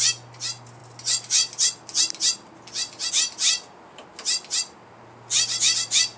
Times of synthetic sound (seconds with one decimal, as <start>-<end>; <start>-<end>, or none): none